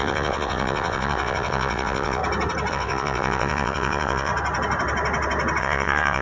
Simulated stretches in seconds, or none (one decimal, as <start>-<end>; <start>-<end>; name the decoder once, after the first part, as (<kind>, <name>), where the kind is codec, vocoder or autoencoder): 0.0-2.2 (vocoder, WaveNeXt); 2.7-4.3; 5.6-6.2